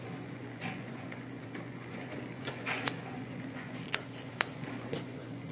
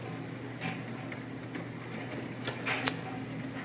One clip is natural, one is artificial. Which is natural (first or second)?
second